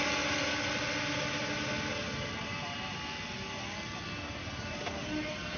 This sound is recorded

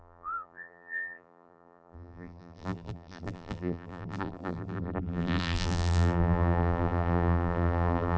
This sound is remade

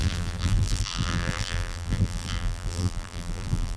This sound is remade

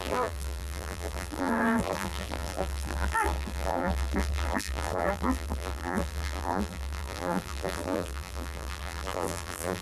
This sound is remade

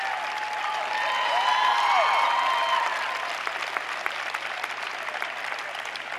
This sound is remade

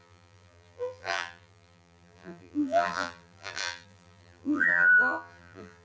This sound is remade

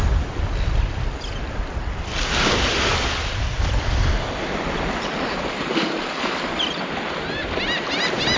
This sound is recorded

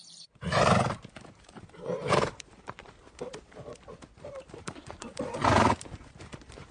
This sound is remade